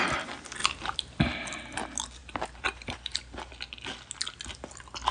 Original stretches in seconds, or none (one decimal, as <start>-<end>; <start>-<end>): 0.0-0.6; 1.2-2.2; 3.5-5.1